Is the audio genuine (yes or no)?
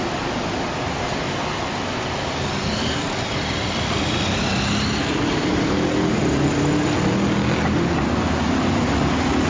yes